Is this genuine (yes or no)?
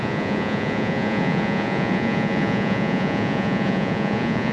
no